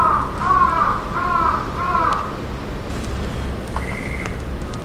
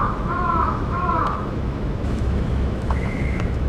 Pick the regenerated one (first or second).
second